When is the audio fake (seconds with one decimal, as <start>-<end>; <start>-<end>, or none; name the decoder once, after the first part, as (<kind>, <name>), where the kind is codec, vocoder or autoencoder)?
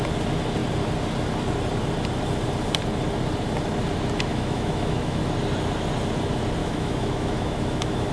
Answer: 4.3-5.2 (autoencoder, DAC-VAE); 6.6-8.1